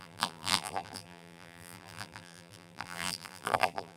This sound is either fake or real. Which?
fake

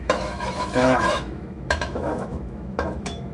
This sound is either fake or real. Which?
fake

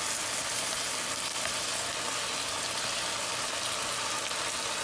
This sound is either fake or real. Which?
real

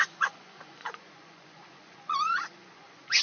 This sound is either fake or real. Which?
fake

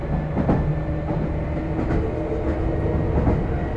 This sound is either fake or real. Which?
real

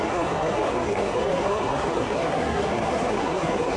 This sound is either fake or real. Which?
fake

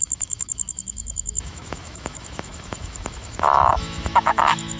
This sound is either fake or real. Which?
fake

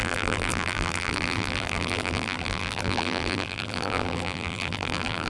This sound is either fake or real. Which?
fake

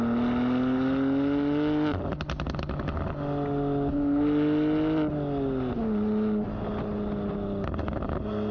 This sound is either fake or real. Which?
real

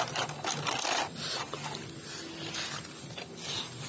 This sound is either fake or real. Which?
real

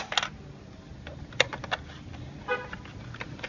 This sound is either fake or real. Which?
real